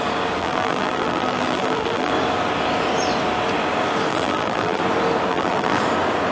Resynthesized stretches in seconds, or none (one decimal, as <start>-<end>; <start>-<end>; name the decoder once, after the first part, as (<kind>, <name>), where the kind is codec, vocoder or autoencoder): 0.4-2.1 (vocoder, BigVGAN v2); 4.1-4.8; 5.3-5.8

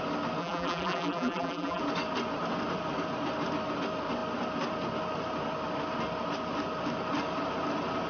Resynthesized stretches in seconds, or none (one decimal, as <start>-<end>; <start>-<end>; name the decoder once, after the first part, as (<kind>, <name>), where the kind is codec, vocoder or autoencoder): 0.4-1.8 (vocoder, BigVGAN v2)

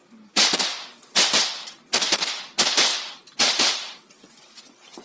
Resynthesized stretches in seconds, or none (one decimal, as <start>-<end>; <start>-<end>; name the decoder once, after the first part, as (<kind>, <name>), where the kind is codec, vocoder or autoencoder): 2.9-4.6 (vocoder, BigVGAN v2)